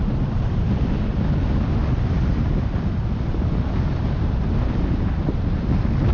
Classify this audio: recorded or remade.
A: recorded